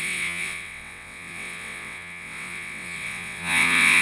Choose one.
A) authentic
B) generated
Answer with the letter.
B